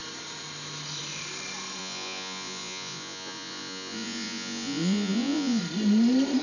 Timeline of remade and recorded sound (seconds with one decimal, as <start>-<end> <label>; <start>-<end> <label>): 0.0-1.8 recorded; 1.8-5.6 remade; 5.6-6.4 recorded